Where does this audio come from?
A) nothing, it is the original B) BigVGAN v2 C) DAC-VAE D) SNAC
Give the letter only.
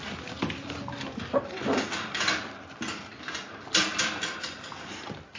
A